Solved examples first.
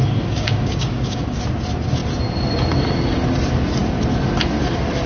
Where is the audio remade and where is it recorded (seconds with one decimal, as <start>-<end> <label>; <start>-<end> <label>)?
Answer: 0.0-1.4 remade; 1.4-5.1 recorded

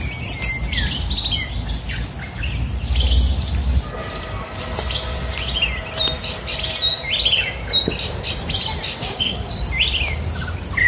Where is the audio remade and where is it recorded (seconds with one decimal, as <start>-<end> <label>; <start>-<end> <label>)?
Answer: 0.0-9.0 recorded; 9.0-9.5 remade; 9.5-10.9 recorded

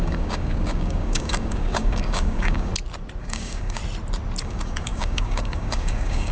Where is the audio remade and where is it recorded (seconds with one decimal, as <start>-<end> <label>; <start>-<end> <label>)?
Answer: 0.0-2.7 remade; 2.7-3.2 recorded; 3.2-3.8 remade; 3.8-4.4 recorded; 4.4-6.3 remade

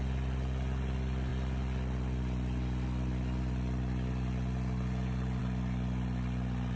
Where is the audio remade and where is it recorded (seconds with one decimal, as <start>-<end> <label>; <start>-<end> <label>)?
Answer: 0.0-6.8 recorded